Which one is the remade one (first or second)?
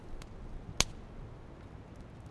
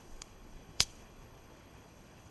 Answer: second